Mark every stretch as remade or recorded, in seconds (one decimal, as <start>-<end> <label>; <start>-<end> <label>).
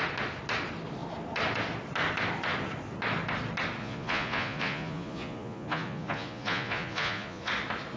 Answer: 0.0-3.8 recorded; 3.8-7.5 remade; 7.5-8.0 recorded